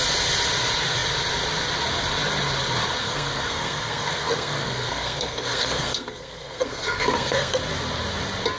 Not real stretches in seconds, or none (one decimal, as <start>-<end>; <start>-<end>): 3.0-7.6